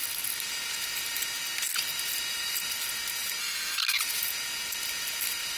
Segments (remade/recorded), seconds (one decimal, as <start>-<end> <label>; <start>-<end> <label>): 0.0-3.4 recorded; 3.4-4.0 remade; 4.0-5.6 recorded